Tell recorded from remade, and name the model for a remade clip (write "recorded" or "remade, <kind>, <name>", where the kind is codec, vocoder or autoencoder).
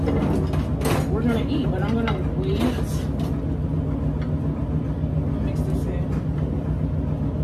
recorded